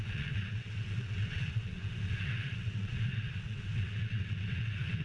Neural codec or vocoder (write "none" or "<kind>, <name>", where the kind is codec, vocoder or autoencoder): vocoder, WaveNeXt